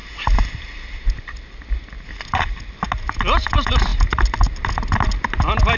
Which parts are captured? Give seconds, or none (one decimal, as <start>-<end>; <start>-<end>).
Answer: 0.0-5.8